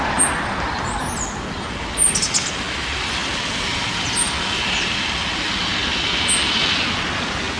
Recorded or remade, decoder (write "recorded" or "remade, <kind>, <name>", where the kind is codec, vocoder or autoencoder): recorded